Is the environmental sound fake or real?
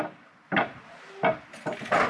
real